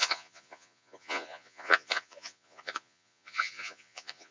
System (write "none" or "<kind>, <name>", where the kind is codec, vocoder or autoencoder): vocoder, Vocos